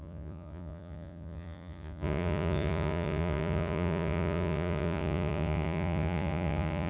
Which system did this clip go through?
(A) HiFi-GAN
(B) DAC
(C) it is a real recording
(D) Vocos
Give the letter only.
D